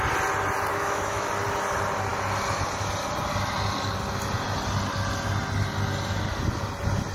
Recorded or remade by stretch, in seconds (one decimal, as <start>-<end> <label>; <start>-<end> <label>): 0.0-0.7 recorded; 0.7-1.3 remade; 1.3-7.1 recorded